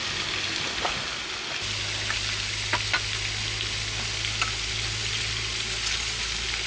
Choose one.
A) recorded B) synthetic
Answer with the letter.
A